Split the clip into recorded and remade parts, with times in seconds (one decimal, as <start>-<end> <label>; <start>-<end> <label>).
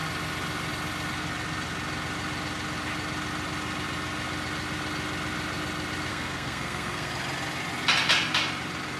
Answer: 0.0-6.1 recorded; 6.1-7.1 remade; 7.1-9.0 recorded